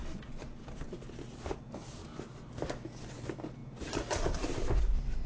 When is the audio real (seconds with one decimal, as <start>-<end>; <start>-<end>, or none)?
0.0-5.3